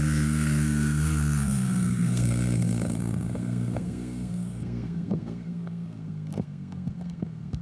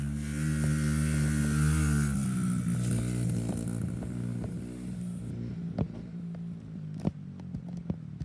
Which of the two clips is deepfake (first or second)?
first